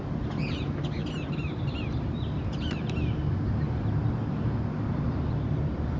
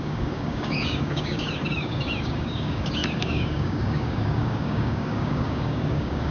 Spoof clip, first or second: second